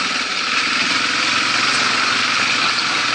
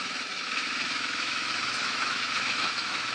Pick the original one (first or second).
first